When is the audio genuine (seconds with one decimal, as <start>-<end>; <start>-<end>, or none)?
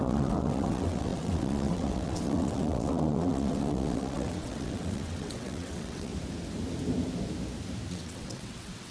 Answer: 6.1-7.9